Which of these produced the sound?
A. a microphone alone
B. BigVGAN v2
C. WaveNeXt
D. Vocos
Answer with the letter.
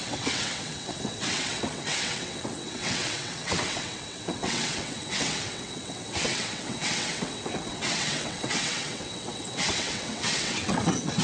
C